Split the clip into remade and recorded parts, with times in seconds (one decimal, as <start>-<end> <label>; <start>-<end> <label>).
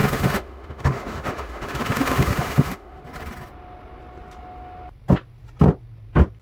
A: 0.0-3.0 remade; 3.0-6.4 recorded